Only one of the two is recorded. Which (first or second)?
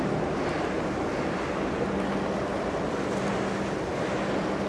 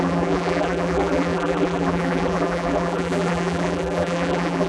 first